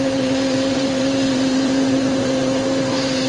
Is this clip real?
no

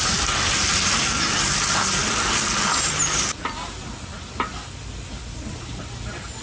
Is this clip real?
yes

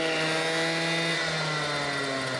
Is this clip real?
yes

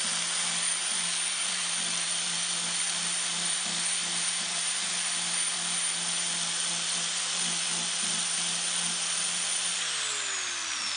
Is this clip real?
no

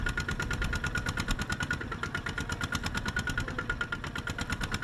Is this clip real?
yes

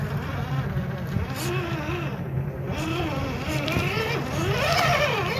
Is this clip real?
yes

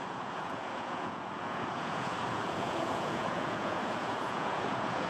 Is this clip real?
no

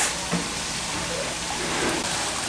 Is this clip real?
yes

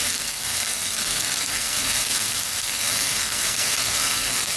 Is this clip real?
no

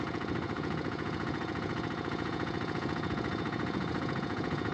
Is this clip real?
no